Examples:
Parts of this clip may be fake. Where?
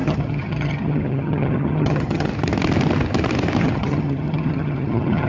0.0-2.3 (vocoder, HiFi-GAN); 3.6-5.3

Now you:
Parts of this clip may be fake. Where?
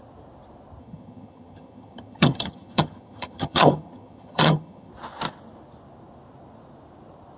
0.8-4.9 (vocoder, HiFi-GAN)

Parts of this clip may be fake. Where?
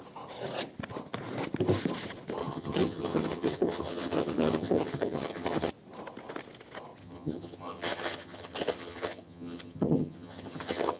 2.4-5.7 (vocoder, HiFi-GAN); 7.0-11.0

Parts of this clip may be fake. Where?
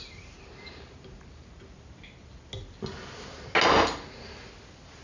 none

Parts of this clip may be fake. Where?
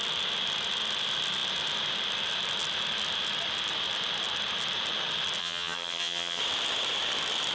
5.4-6.4 (vocoder, HiFi-GAN)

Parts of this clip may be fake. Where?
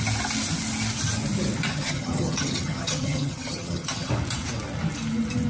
1.7-4.1 (vocoder, HiFi-GAN)